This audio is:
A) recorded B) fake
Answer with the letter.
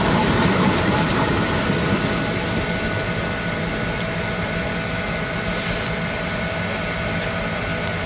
A